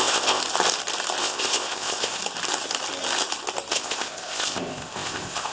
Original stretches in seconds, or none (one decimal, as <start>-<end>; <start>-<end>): 0.4-1.2; 2.2-3.7